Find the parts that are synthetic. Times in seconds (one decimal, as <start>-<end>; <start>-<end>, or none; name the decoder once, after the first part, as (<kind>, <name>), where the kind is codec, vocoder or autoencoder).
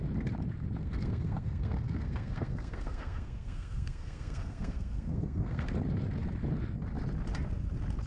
0.8-5.7 (codec, SNAC)